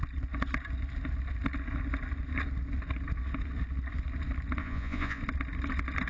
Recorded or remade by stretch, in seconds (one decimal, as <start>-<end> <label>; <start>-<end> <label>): 0.0-4.6 recorded; 4.6-5.2 remade; 5.2-6.1 recorded